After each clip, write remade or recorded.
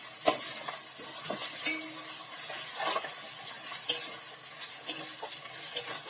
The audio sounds recorded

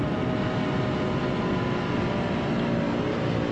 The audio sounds recorded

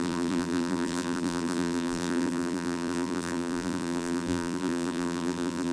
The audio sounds remade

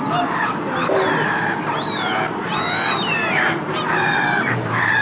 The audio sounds remade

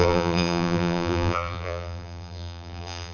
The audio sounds remade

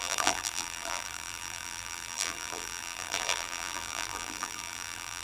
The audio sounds remade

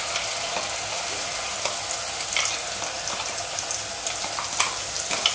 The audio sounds recorded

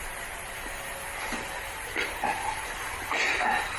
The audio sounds remade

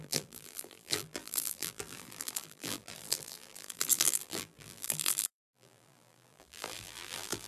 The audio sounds remade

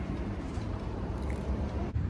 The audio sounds remade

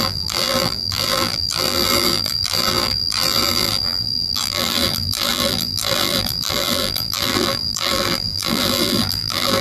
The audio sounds remade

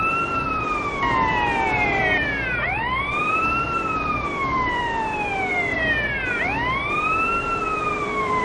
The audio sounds remade